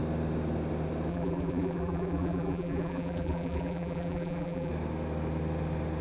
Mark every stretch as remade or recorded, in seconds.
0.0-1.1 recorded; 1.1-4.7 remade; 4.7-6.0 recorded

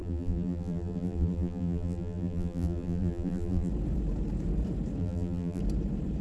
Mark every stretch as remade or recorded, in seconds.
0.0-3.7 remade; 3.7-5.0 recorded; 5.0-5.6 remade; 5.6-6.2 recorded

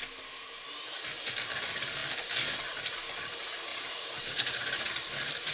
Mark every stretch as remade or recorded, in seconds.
0.0-3.7 recorded; 3.7-4.9 remade; 4.9-5.5 recorded

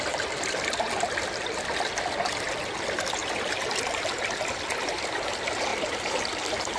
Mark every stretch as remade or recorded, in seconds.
0.0-3.2 recorded; 3.2-3.7 remade; 3.7-5.7 recorded; 5.7-6.8 remade

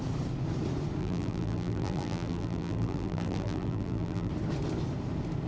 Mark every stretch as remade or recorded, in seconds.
0.0-1.0 recorded; 1.0-4.3 remade; 4.3-5.5 recorded

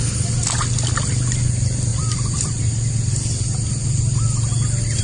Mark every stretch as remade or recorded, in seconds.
0.0-1.9 recorded; 1.9-3.4 remade; 3.4-5.0 recorded

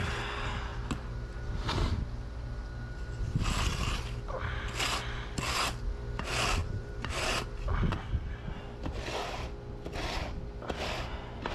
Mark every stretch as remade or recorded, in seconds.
0.0-6.6 recorded; 6.6-7.4 remade; 7.4-11.5 recorded